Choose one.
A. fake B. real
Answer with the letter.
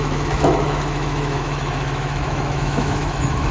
A